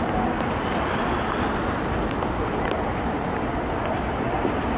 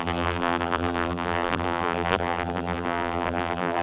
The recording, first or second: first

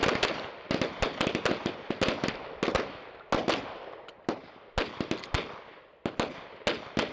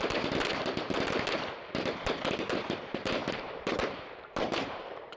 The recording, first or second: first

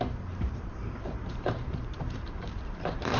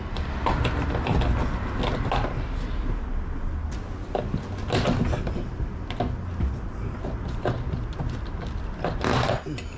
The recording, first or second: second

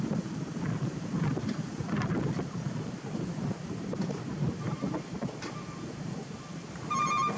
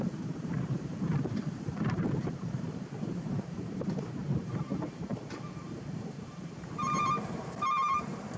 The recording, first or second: first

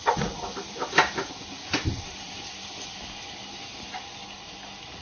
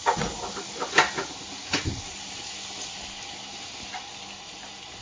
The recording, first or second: second